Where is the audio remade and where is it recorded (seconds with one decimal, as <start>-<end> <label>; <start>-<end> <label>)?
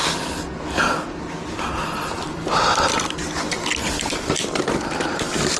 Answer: 0.0-5.6 recorded